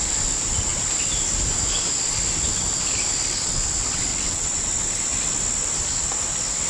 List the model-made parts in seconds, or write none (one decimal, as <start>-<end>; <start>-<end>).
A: 4.1-4.7